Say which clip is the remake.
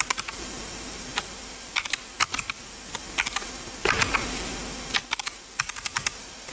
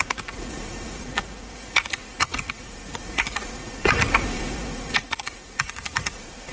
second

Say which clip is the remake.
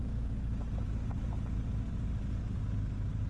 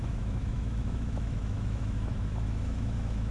second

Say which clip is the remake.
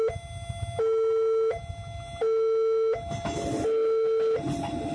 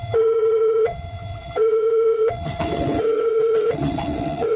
second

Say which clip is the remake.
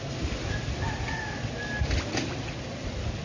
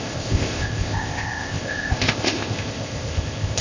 second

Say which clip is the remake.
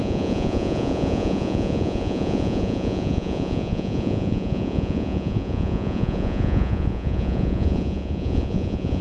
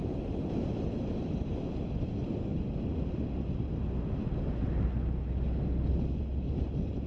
first